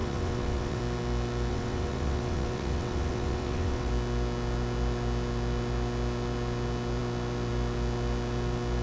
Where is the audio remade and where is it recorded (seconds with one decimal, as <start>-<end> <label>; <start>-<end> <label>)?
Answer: 0.0-0.8 remade; 0.8-1.5 recorded; 1.5-3.9 remade; 3.9-8.8 recorded